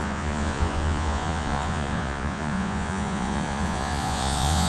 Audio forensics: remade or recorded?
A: remade